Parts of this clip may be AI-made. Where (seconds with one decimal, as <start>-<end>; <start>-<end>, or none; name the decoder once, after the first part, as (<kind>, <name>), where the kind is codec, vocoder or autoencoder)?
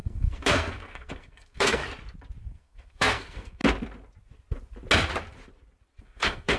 0.0-1.8 (codec, SNAC); 2.4-3.6; 6.0-6.6